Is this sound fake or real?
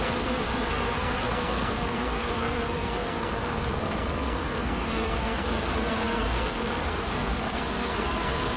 fake